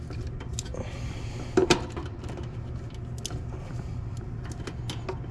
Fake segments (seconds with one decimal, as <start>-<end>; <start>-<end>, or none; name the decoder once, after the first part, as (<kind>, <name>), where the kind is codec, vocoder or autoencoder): none